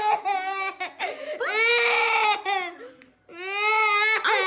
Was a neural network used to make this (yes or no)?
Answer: no